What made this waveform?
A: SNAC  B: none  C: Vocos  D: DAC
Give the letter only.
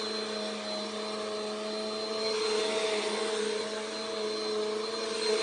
B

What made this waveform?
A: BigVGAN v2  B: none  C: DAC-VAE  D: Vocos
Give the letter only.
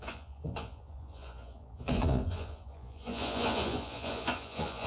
D